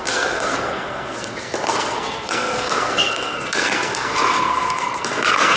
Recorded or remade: remade